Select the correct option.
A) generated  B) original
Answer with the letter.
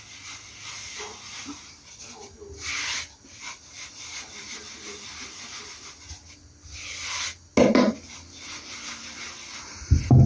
B